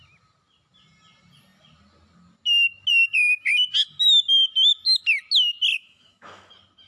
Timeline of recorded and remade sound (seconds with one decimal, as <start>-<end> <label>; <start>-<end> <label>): 0.0-5.7 recorded; 5.7-6.5 remade; 6.5-6.9 recorded